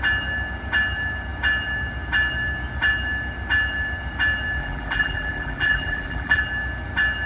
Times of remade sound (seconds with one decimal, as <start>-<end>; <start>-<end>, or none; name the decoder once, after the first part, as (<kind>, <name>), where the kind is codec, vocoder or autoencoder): 4.6-6.4 (vocoder, BigVGAN v2)